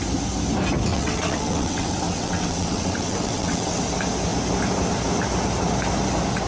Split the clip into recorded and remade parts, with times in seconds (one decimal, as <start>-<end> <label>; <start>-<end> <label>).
0.0-0.9 recorded; 0.9-3.8 remade; 3.8-6.5 recorded